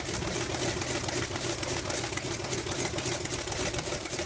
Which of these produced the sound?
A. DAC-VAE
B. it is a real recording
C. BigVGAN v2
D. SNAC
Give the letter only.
B